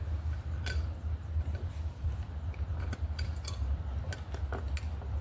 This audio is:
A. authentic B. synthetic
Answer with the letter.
A